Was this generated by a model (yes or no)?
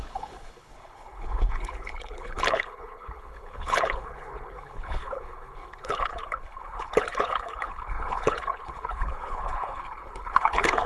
yes